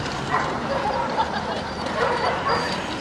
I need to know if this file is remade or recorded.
remade